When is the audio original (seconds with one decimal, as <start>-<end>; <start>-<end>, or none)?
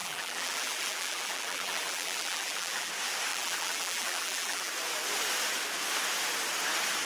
2.9-3.3; 4.7-7.0